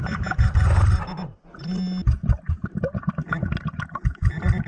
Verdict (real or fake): real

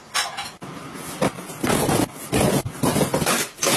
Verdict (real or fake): real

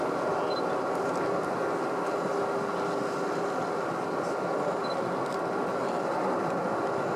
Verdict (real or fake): real